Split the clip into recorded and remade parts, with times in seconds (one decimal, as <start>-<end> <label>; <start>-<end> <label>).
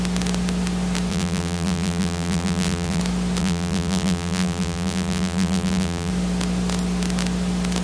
0.0-1.1 recorded; 1.1-3.0 remade; 3.0-3.4 recorded; 3.4-6.1 remade; 6.1-7.8 recorded